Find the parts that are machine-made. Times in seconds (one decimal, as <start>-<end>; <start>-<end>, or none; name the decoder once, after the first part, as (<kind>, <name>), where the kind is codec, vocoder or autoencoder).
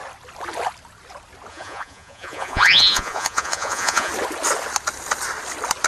1.5-4.1 (vocoder, Vocos)